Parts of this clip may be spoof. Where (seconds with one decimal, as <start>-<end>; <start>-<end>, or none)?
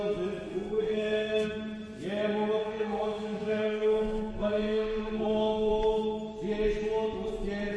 0.5-1.5; 2.6-5.7